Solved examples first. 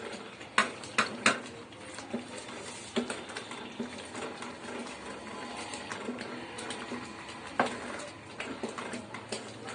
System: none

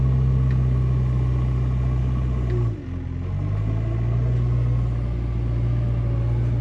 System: none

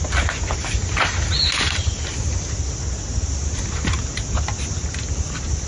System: none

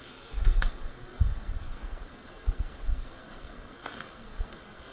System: codec, SNAC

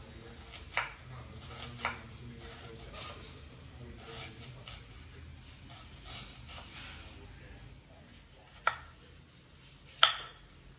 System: none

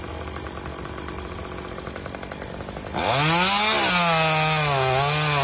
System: none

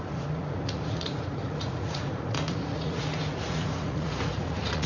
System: vocoder, Vocos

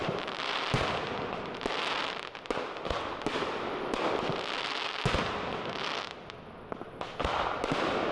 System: none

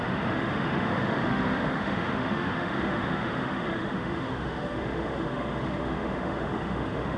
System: autoencoder, DAC-VAE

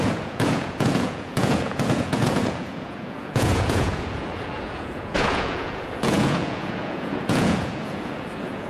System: vocoder, Vocos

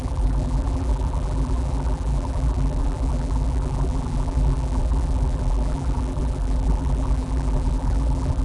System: vocoder, BigVGAN v2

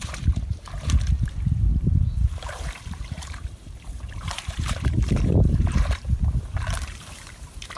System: vocoder, BigVGAN v2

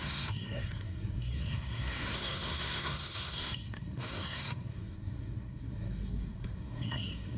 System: codec, SNAC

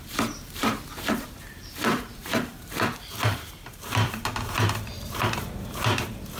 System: vocoder, BigVGAN v2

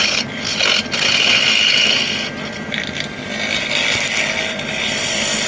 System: none